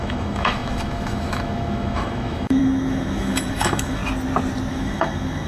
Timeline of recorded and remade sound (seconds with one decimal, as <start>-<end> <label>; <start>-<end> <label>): 0.0-4.0 remade; 4.0-4.7 recorded; 4.7-5.5 remade

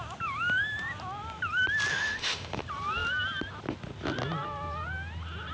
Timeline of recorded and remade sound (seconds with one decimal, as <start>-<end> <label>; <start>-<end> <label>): 0.0-1.9 recorded; 1.9-2.6 remade; 2.6-5.5 recorded

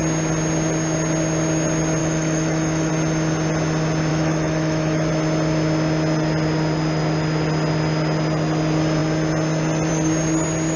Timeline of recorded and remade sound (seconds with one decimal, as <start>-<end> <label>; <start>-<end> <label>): 0.0-2.0 recorded; 2.0-2.9 remade; 2.9-4.1 recorded; 4.1-5.1 remade; 5.1-10.8 recorded